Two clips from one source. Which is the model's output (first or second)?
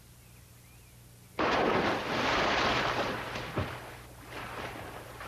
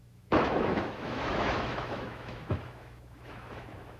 second